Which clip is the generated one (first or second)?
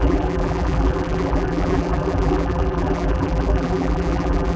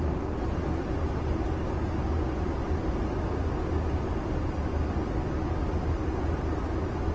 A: first